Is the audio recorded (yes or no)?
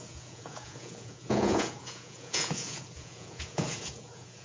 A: no